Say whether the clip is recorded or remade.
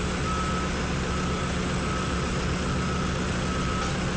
recorded